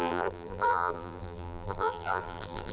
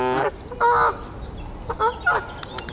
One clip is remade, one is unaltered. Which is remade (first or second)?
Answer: first